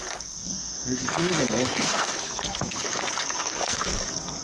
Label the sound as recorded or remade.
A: remade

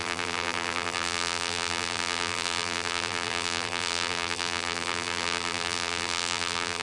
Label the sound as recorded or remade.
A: remade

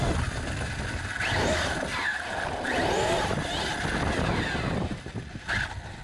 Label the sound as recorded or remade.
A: recorded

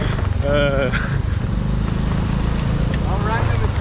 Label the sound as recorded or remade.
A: recorded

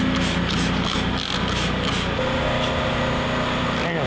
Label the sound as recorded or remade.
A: recorded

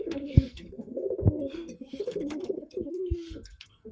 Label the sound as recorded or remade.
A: remade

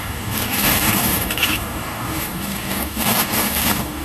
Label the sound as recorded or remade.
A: remade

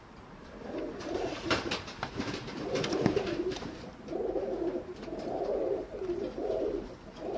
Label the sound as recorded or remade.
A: remade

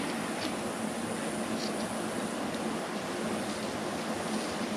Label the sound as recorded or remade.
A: recorded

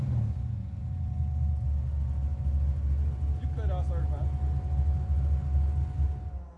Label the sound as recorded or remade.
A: recorded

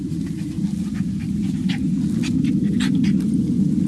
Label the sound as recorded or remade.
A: recorded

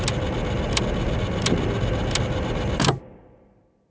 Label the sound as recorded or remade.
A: recorded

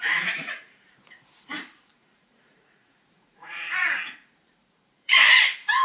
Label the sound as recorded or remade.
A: remade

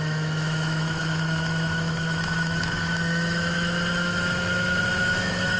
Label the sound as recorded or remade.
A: remade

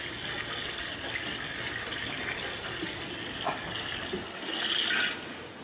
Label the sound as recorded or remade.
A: recorded